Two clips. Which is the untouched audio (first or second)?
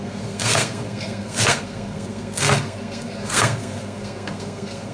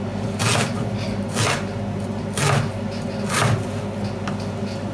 second